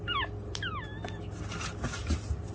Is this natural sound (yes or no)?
yes